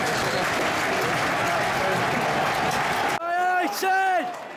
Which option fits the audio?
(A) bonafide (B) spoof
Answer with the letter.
A